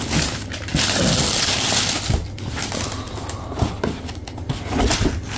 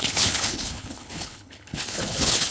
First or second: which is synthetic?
second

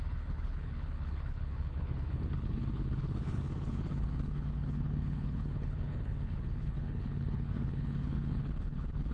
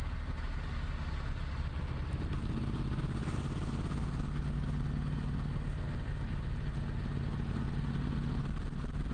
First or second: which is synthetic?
first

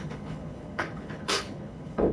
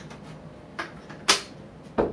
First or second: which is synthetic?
first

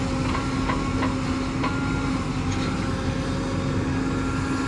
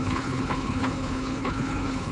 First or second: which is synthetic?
second